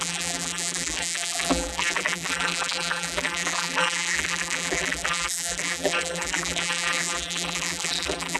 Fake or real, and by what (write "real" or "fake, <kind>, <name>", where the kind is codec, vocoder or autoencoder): fake, vocoder, BigVGAN v2